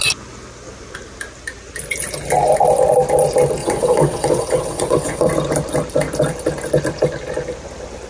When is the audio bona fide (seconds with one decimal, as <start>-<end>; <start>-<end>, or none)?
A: 0.0-3.6; 5.3-8.1